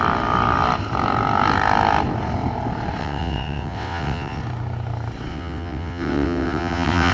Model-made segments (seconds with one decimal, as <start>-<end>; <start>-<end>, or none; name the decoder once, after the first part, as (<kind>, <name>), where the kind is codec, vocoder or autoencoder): 3.0-4.4 (vocoder, WaveNeXt); 5.3-7.1

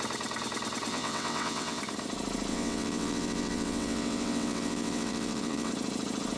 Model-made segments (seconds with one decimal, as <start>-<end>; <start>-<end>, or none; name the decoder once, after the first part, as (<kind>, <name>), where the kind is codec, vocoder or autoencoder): 0.9-1.8 (vocoder, WaveNeXt); 2.5-5.7

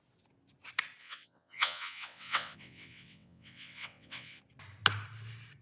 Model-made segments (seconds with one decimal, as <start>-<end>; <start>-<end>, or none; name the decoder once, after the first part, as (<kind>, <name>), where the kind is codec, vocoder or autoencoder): 1.0-4.4 (vocoder, WaveNeXt)

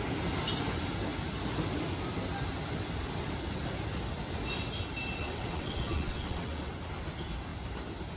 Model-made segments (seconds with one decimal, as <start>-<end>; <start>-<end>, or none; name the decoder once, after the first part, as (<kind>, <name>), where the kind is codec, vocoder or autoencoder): 5.2-6.7 (vocoder, WaveNeXt)

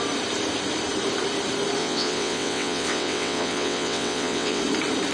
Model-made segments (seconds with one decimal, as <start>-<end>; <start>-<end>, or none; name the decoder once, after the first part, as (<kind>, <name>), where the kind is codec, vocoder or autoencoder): 1.8-4.6 (vocoder, WaveNeXt)

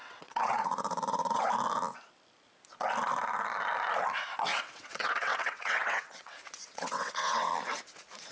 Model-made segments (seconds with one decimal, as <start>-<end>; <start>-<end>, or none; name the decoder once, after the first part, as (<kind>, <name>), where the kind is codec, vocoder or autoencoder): 0.0-1.5 (vocoder, WaveNeXt); 4.5-7.5

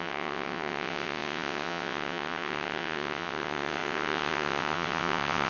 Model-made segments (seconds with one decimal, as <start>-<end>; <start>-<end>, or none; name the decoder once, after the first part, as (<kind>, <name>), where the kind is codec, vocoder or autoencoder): 0.0-5.5 (vocoder, WaveNeXt)